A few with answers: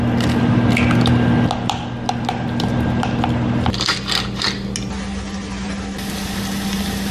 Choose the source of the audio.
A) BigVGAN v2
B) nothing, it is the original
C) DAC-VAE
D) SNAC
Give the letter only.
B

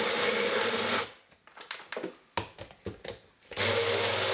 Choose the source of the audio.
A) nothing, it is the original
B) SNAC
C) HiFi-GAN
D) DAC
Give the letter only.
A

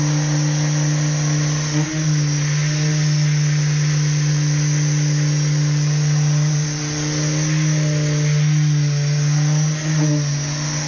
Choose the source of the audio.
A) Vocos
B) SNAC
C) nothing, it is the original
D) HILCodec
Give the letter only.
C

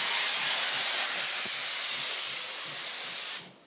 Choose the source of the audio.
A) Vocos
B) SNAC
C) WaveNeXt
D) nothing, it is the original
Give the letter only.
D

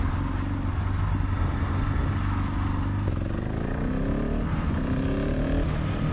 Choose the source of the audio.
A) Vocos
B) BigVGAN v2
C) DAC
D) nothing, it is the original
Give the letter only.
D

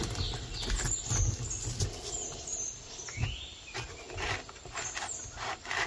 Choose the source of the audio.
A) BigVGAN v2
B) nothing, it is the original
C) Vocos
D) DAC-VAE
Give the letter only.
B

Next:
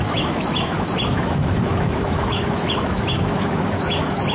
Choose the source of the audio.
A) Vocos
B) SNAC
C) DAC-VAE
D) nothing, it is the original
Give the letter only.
C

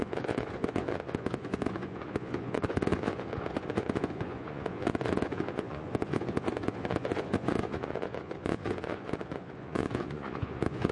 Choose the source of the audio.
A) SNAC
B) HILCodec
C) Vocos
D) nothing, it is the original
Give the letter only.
C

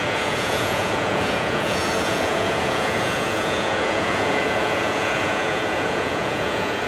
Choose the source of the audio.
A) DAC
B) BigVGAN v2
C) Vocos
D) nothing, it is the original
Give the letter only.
C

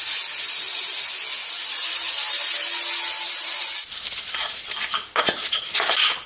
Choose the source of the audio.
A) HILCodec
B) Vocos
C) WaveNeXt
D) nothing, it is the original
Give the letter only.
D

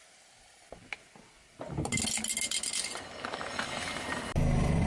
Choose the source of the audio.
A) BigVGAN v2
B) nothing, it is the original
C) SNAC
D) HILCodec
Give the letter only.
B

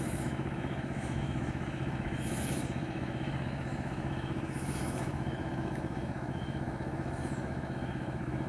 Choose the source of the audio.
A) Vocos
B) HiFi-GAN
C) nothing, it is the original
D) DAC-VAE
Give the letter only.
D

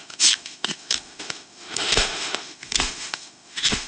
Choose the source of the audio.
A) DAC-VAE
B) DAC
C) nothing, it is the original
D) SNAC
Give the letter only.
A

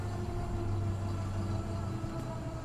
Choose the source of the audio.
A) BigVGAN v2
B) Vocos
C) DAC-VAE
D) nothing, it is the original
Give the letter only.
D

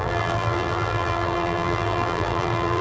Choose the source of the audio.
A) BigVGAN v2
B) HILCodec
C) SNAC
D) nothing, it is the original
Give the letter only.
A